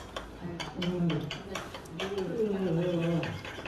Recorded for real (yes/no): yes